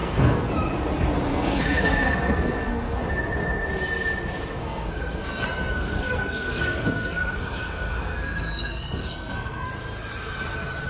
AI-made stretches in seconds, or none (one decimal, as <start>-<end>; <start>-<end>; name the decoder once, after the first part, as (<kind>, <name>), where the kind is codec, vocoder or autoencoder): 0.0-0.5 (codec, SNAC); 1.3-3.0; 4.6-9.7